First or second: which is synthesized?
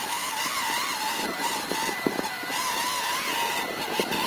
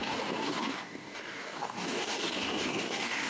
second